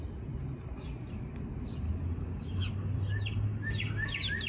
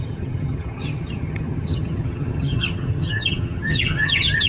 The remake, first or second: second